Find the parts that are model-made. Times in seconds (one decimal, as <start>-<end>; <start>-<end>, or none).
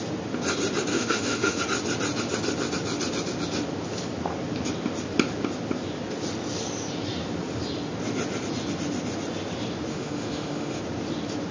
0.9-1.6; 9.9-10.8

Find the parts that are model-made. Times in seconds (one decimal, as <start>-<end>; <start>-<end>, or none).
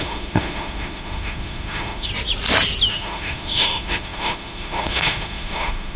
0.0-2.1; 2.9-6.0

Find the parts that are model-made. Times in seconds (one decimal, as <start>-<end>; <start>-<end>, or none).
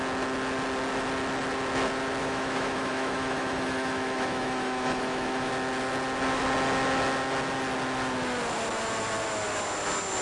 2.2-5.5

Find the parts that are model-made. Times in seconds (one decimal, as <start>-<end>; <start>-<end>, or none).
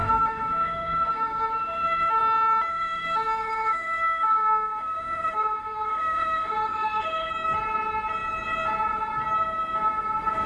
0.0-2.2; 2.7-7.3